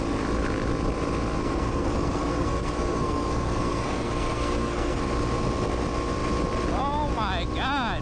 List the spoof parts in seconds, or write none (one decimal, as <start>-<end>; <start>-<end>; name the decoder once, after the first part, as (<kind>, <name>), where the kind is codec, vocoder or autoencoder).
1.4-5.0 (codec, SNAC)